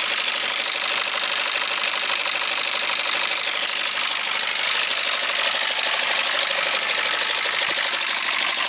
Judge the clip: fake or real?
real